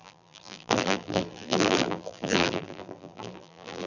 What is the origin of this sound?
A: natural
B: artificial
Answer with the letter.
B